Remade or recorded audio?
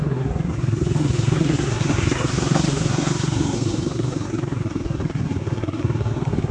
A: remade